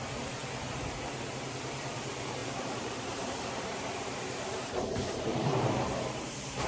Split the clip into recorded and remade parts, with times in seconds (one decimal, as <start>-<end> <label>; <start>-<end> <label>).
0.0-6.7 remade